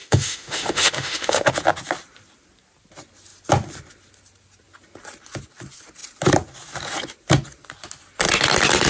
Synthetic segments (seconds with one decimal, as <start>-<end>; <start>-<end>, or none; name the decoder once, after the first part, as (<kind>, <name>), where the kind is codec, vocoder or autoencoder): 0.0-1.5 (autoencoder, DAC-VAE)